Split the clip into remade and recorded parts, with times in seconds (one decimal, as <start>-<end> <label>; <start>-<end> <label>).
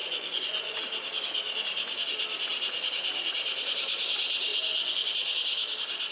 0.0-0.8 remade; 0.8-4.5 recorded; 4.5-5.1 remade; 5.1-6.1 recorded